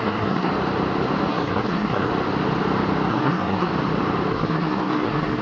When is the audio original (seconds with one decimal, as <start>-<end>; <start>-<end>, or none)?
0.5-1.3; 2.1-3.1; 3.7-4.3